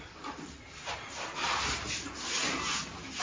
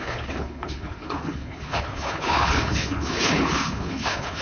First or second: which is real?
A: first